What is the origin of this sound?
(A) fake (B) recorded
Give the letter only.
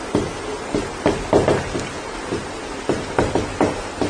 B